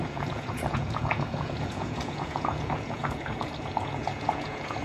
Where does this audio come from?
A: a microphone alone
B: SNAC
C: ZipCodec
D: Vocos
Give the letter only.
D